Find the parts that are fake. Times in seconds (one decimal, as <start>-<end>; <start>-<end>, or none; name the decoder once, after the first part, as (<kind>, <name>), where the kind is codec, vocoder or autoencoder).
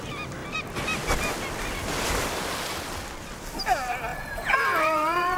4.1-5.4 (vocoder, Vocos)